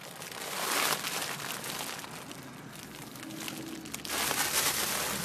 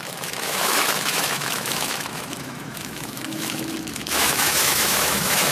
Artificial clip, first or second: second